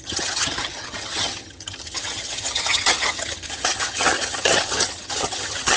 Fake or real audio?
fake